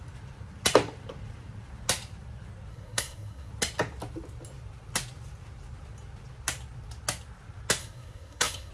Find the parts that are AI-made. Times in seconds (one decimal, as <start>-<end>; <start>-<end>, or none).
2.7-3.5; 7.8-8.7